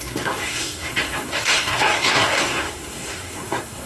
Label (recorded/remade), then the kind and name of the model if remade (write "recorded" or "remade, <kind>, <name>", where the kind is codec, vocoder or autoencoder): remade, codec, SNAC